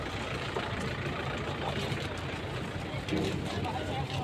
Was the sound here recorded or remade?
recorded